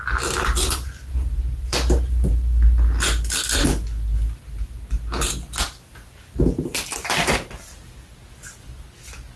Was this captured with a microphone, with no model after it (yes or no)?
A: yes